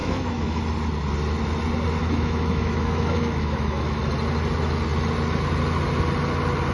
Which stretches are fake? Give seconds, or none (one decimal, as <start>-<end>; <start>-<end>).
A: 0.0-0.6; 2.0-4.0